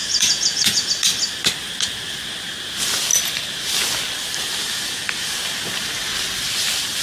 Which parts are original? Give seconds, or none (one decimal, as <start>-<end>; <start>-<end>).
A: 0.9-7.0